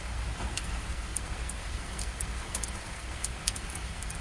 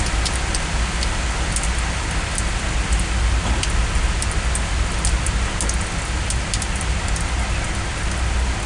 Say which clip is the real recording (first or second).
second